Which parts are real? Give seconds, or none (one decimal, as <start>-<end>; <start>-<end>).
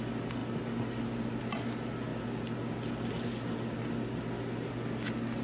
0.0-0.4; 1.4-5.4